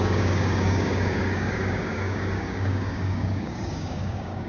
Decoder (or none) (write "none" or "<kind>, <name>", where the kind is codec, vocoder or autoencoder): codec, DAC